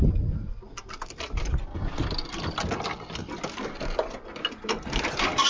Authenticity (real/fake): real